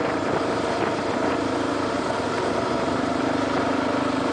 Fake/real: fake